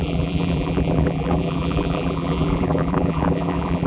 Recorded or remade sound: remade